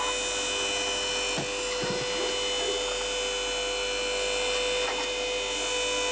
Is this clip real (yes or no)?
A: yes